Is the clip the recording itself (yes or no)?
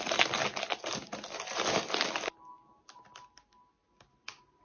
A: yes